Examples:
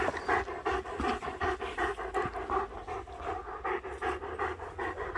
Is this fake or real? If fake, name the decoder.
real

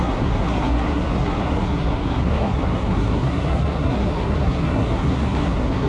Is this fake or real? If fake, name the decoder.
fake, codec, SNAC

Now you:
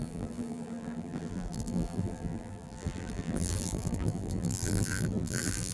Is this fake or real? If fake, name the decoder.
fake, vocoder, BigVGAN v2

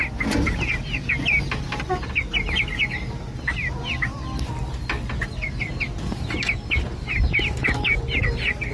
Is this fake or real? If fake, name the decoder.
real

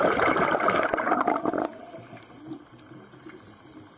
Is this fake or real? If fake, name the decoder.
real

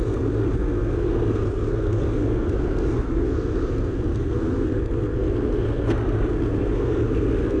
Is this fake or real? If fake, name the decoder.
fake, codec, SNAC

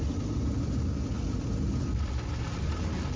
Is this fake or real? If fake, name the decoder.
real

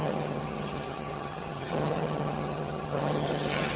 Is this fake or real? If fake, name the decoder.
fake, vocoder, HiFi-GAN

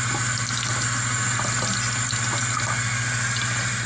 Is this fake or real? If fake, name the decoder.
real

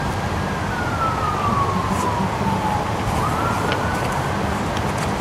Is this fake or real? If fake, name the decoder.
real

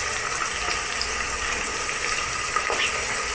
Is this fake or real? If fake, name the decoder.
real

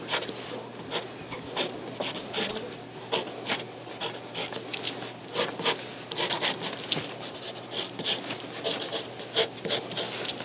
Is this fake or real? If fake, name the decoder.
real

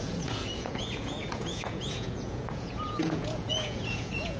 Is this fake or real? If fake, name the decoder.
fake, vocoder, Vocos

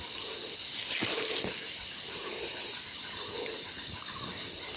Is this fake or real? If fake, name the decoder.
real